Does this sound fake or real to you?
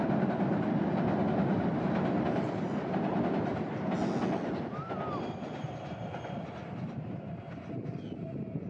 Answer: real